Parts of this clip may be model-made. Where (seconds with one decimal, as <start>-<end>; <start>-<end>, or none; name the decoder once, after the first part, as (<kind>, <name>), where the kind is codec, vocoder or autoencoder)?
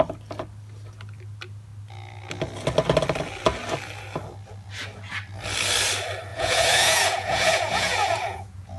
6.3-8.8 (vocoder, Vocos)